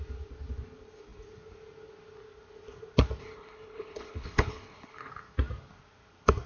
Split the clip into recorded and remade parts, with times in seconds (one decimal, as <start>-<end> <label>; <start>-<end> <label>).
0.0-3.2 recorded; 3.2-5.1 remade; 5.1-6.5 recorded